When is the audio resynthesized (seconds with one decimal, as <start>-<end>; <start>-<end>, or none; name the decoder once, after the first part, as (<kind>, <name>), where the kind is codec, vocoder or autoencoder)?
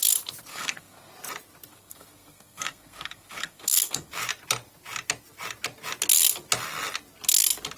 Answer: 0.5-1.1 (codec, SNAC); 1.7-4.1